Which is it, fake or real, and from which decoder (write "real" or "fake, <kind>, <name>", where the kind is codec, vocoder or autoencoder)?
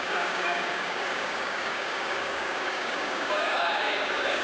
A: fake, codec, DAC